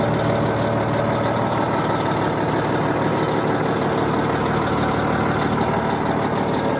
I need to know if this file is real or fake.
real